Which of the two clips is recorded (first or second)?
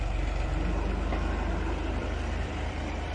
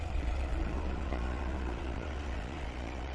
first